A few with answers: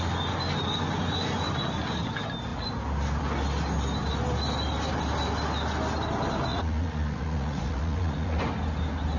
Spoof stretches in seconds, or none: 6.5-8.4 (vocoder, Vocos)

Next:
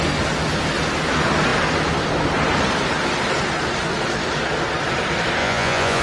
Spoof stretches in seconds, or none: 5.4-6.0 (vocoder, Vocos)

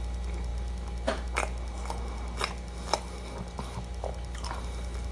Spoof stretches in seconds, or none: none

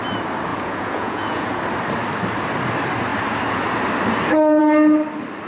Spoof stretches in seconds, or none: 0.5-1.6 (vocoder, Vocos)

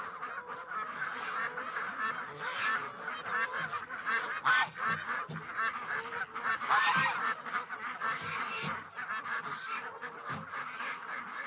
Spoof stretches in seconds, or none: none

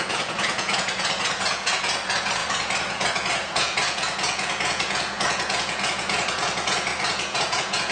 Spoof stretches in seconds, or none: 0.0-7.9 (vocoder, Vocos)

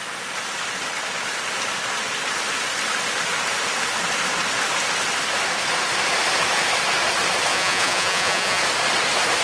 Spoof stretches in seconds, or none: 7.5-8.6 (vocoder, Vocos)

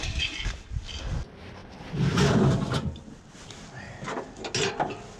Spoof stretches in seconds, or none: none